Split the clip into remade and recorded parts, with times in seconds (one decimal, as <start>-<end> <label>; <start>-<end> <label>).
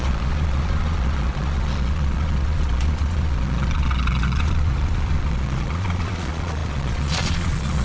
0.0-7.8 remade